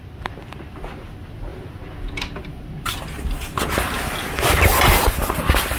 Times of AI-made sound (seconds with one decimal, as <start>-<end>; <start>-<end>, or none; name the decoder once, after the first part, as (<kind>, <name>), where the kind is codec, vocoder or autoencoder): none